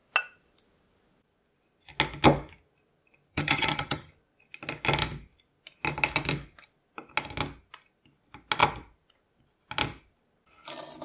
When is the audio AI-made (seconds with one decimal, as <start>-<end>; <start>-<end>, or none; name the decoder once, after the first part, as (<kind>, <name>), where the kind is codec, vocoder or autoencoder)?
3.3-4.1 (vocoder, HiFi-GAN)